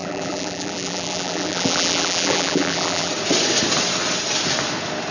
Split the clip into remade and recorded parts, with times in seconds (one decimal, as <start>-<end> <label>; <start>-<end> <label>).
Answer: 0.0-3.1 remade; 3.1-5.1 recorded